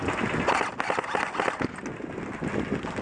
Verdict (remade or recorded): recorded